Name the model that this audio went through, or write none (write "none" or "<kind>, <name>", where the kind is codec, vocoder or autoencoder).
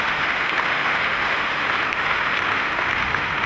autoencoder, DAC-VAE